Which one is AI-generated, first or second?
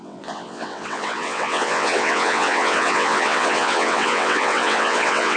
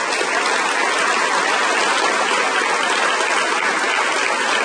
first